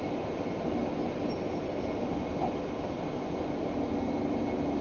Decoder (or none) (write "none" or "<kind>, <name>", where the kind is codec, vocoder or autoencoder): none